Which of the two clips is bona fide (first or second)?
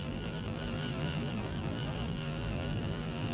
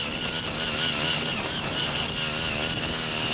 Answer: second